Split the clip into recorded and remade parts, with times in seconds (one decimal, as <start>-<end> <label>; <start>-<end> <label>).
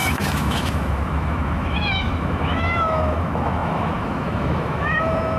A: 0.0-5.4 remade